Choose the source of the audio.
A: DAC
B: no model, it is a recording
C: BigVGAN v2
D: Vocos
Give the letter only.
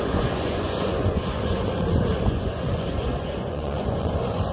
D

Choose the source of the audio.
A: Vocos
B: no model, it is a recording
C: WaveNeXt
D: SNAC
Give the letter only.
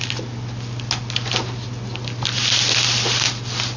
B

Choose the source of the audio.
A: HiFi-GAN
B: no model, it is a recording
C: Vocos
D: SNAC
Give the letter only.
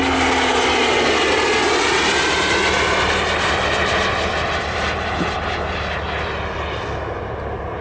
B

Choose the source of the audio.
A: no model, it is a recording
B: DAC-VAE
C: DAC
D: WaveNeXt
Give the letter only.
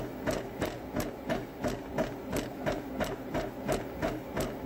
A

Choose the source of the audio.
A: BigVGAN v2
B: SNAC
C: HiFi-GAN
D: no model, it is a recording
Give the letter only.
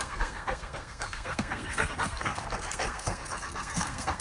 B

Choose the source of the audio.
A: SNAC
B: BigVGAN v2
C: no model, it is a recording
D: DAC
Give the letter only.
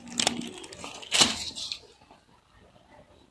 B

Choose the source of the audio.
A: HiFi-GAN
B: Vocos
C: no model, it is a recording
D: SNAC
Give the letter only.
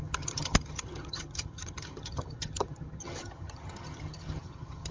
A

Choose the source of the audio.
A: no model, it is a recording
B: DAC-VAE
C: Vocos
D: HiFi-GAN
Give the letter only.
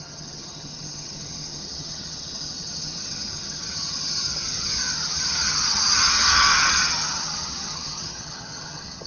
D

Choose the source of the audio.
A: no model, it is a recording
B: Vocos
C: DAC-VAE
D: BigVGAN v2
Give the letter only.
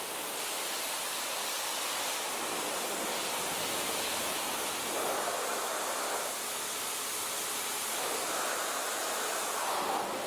A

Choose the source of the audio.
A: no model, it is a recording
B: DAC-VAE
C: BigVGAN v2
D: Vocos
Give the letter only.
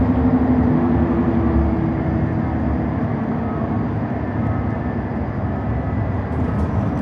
A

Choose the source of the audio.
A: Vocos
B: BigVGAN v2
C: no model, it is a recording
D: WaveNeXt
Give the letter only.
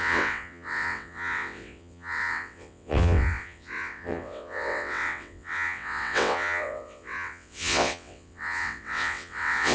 D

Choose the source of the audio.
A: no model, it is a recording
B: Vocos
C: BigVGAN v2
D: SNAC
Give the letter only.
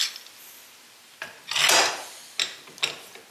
A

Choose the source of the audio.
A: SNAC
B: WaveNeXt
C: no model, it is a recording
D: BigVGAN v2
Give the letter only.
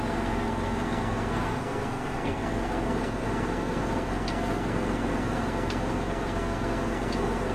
A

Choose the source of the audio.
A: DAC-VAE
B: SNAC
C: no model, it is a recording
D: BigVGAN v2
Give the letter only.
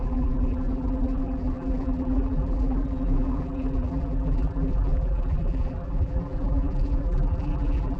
D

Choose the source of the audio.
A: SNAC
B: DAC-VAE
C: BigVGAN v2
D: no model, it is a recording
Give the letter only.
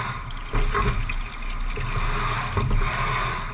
D